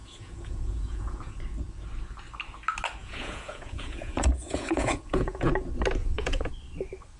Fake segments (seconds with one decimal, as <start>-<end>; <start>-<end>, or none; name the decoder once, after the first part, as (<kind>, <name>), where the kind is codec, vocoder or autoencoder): 0.0-1.4 (vocoder, Vocos); 3.0-5.5; 6.0-6.5